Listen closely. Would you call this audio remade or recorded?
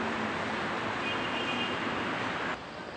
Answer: recorded